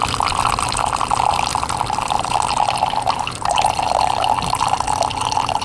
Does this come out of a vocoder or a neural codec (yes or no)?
no